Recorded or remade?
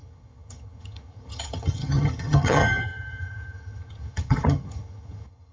remade